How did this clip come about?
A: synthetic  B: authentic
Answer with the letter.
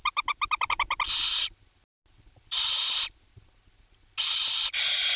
B